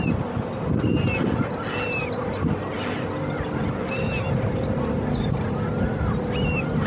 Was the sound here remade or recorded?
recorded